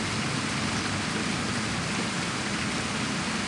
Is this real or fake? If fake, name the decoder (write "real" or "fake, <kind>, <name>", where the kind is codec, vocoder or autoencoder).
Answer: real